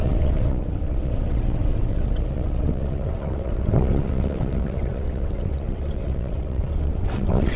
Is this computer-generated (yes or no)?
yes